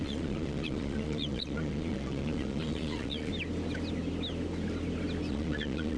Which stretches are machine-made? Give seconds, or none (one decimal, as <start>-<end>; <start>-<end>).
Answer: 0.0-3.3; 5.3-6.0